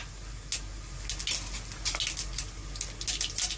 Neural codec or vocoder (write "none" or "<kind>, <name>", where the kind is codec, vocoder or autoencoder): none